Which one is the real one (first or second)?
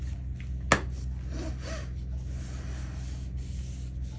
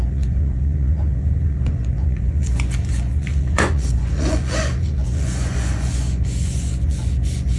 first